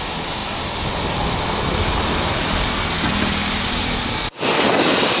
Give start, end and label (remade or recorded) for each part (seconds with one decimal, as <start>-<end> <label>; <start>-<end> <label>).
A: 0.0-5.2 recorded

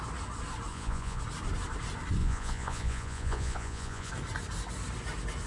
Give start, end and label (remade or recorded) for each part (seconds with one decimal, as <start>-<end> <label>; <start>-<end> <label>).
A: 0.0-0.7 recorded; 0.7-1.2 remade; 1.2-2.2 recorded; 2.2-4.1 remade; 4.1-5.5 recorded

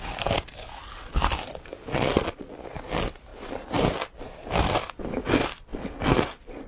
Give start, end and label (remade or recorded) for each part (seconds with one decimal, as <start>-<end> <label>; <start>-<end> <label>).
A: 0.0-1.9 recorded; 1.9-2.8 remade; 2.8-6.7 recorded

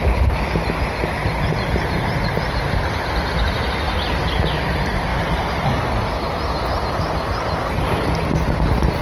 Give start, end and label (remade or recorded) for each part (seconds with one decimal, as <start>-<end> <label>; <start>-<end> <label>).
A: 0.0-9.0 recorded

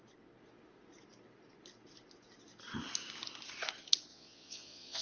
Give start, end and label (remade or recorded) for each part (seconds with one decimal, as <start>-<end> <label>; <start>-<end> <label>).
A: 0.0-4.1 recorded; 4.1-5.0 remade

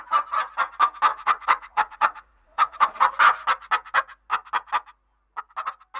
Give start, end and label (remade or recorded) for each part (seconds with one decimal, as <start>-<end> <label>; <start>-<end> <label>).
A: 0.0-1.1 recorded; 1.1-3.1 remade; 3.1-6.0 recorded